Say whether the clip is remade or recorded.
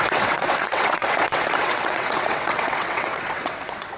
remade